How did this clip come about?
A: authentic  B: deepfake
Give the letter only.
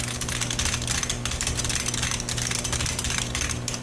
A